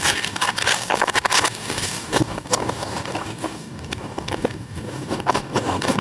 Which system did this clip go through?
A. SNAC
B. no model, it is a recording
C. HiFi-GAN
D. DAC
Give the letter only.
D